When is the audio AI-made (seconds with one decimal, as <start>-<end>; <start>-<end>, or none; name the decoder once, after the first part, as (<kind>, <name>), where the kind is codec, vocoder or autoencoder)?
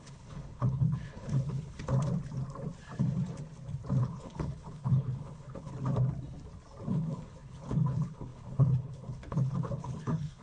0.0-1.9 (codec, HILCodec); 4.0-5.7; 6.9-10.4